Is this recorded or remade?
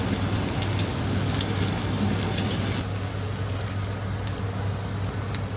recorded